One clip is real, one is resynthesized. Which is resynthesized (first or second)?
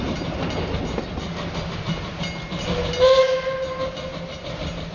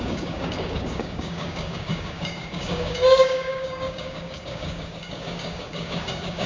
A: second